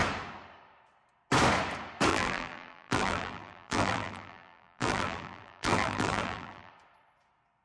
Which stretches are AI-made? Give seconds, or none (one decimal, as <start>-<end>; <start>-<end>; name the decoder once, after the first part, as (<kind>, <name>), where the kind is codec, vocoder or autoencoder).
2.1-6.7 (vocoder, BigVGAN v2)